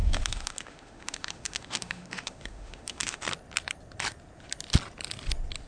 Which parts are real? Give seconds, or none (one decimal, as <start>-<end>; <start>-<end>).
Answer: 3.2-5.7